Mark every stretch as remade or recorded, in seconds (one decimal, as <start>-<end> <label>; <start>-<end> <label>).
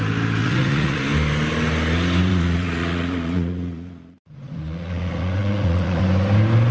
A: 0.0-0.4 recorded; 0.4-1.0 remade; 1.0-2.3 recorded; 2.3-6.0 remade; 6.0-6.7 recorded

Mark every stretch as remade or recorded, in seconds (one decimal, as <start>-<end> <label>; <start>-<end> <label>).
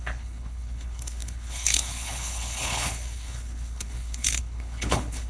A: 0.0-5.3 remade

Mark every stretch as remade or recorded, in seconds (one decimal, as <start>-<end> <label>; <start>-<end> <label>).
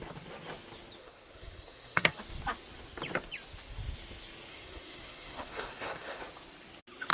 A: 0.0-1.0 recorded; 1.0-2.2 remade; 2.2-4.5 recorded; 4.5-6.2 remade; 6.2-7.1 recorded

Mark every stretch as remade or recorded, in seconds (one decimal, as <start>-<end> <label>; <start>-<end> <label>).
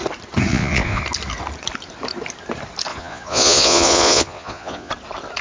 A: 0.0-0.5 recorded; 0.5-1.0 remade; 1.0-2.9 recorded; 2.9-4.9 remade; 4.9-5.4 recorded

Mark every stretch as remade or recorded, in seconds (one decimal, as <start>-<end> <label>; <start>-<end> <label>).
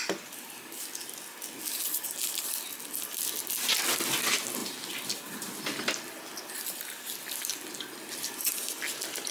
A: 0.0-9.3 recorded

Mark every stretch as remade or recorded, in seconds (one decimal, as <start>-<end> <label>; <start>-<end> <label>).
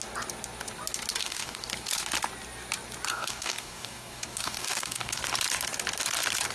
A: 0.0-1.2 recorded; 1.2-1.7 remade; 1.7-3.1 recorded; 3.1-5.2 remade; 5.2-6.5 recorded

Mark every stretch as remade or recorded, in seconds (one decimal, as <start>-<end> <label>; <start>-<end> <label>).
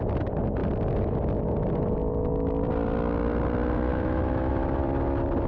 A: 0.0-3.9 recorded; 3.9-4.5 remade; 4.5-5.5 recorded